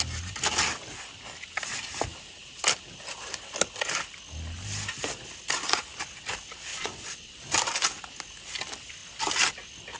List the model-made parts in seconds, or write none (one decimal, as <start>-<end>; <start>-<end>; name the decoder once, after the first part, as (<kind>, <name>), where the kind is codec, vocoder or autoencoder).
6.7-7.4 (vocoder, WaveNeXt)